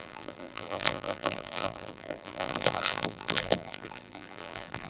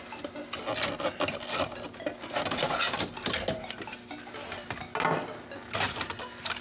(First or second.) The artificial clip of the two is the first